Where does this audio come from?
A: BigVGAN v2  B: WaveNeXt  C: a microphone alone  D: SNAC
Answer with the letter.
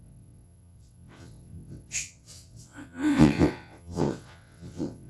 B